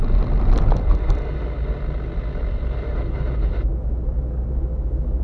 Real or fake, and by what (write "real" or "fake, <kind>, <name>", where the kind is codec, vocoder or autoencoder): real